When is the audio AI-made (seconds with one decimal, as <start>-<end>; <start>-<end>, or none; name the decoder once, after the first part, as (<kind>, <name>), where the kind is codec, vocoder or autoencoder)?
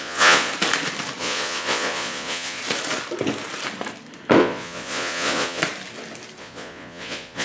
0.0-0.5 (vocoder, Vocos); 1.2-2.6; 4.4-5.6; 6.4-7.4